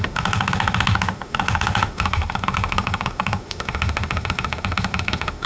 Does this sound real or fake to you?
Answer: fake